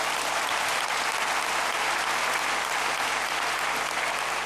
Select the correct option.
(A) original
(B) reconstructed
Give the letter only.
A